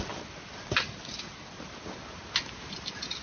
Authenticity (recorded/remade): recorded